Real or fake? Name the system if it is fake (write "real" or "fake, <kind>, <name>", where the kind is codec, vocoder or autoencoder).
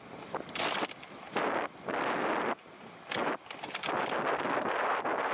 real